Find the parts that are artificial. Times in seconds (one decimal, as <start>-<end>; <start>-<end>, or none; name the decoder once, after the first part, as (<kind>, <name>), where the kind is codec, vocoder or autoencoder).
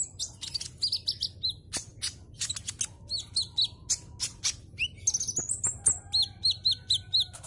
none